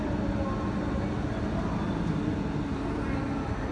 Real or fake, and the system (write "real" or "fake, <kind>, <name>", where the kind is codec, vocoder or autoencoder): real